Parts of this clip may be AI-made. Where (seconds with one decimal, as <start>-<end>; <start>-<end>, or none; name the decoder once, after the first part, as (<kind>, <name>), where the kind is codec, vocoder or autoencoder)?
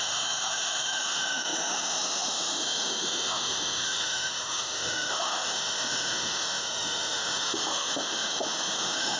0.0-9.2 (autoencoder, DAC-VAE)